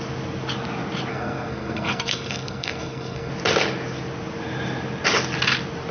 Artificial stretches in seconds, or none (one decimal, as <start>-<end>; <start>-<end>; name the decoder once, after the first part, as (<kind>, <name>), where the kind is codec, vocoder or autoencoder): 1.1-3.3 (codec, SNAC)